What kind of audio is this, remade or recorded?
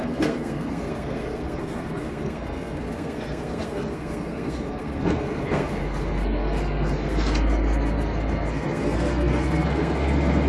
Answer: remade